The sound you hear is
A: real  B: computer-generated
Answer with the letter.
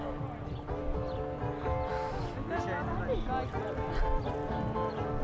A